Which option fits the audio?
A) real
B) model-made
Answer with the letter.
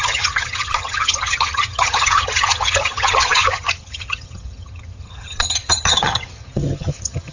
B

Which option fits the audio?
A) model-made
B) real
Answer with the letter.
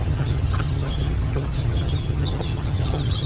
A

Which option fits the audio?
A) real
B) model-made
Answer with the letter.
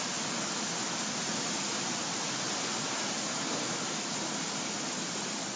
A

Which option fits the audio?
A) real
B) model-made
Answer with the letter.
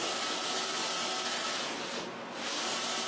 A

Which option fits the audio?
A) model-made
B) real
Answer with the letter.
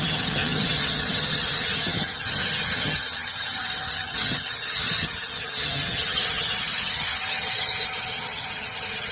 A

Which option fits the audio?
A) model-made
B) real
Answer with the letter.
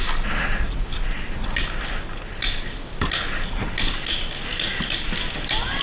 B